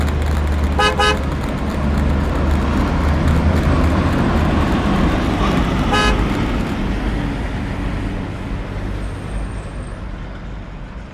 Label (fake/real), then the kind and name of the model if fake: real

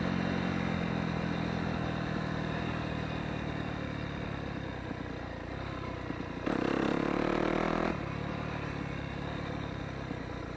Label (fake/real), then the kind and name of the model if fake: real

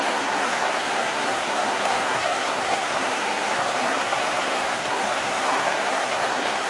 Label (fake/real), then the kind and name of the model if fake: fake, codec, SNAC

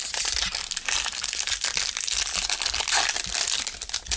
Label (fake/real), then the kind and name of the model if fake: real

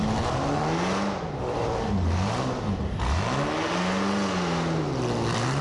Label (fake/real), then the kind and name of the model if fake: real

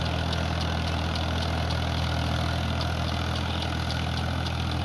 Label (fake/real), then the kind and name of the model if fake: real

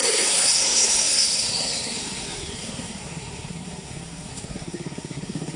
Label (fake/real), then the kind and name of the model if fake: fake, codec, SNAC